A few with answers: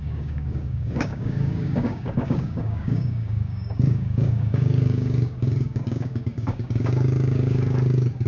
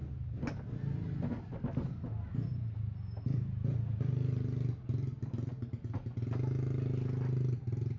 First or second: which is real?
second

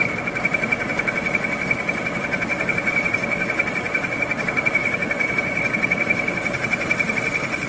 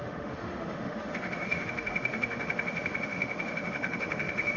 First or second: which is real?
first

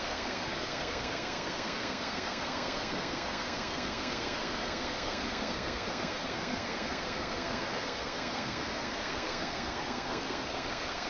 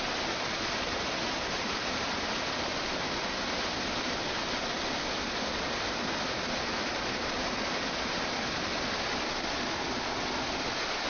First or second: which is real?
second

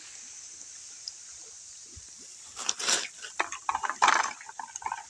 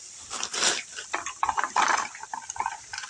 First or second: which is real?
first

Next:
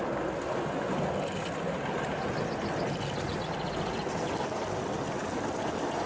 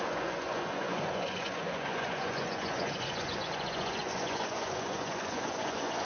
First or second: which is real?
first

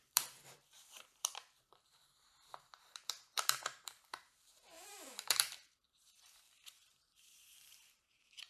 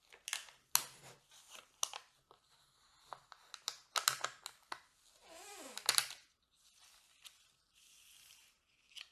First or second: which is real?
second